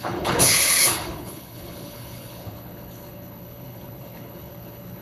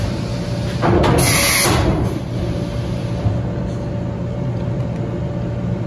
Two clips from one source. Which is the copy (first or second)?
first